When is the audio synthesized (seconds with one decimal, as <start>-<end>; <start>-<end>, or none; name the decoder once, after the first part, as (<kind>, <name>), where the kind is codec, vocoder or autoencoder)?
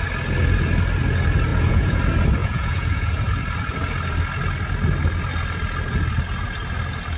1.5-2.0 (vocoder, Vocos); 2.4-3.1